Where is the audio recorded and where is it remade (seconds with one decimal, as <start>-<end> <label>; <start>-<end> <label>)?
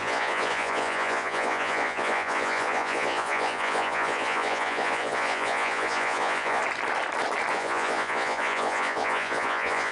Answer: 0.0-6.6 remade; 6.6-7.5 recorded; 7.5-9.9 remade